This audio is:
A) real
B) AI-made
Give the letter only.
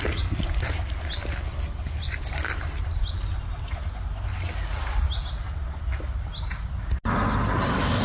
A